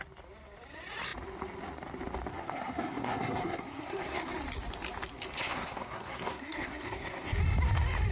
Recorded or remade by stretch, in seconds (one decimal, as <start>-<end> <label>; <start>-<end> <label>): 0.0-2.3 recorded; 2.3-4.2 remade; 4.2-5.4 recorded; 5.4-7.4 remade; 7.4-8.1 recorded